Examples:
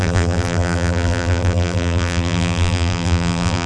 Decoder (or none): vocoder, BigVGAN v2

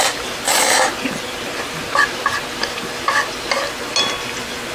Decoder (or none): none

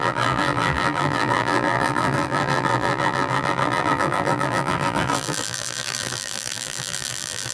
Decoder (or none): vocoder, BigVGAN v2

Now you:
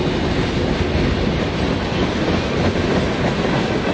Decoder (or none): none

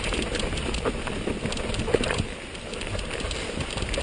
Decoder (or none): none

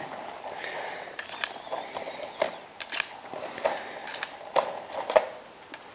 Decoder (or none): none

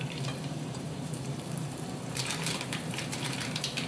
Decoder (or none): vocoder, BigVGAN v2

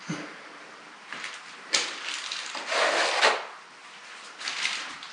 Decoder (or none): none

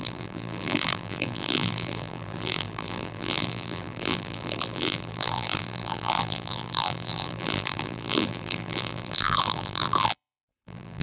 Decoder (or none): vocoder, BigVGAN v2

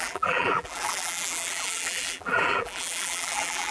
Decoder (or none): vocoder, BigVGAN v2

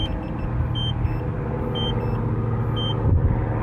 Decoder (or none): none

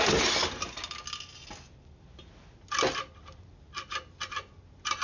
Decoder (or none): none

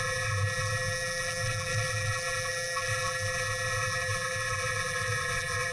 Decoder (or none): vocoder, BigVGAN v2